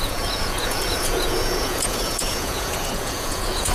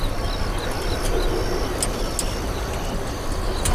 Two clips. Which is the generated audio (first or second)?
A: first